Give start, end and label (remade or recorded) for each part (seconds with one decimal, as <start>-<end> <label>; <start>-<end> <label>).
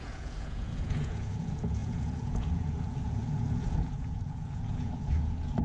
0.0-5.6 remade